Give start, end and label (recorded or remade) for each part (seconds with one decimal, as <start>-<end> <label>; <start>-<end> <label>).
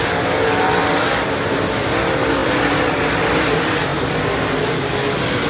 0.0-5.5 recorded